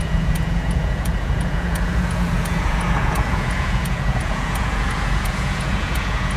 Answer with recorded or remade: remade